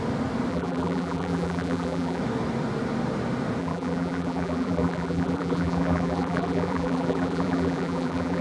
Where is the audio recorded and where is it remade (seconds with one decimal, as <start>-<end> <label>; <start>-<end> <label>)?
0.0-0.5 recorded; 0.5-2.2 remade; 2.2-3.6 recorded; 3.6-8.4 remade